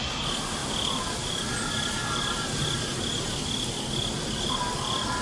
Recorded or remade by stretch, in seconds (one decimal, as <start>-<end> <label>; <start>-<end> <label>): 0.0-5.2 recorded